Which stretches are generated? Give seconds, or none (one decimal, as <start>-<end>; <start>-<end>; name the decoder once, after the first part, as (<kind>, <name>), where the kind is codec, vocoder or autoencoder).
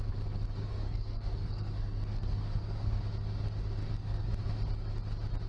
0.6-3.0 (codec, SNAC); 3.8-4.3